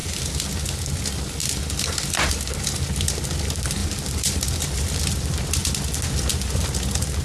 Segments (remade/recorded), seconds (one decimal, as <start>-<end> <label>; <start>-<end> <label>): 0.0-1.4 recorded; 1.4-2.3 remade; 2.3-3.8 recorded; 3.8-5.1 remade; 5.1-7.2 recorded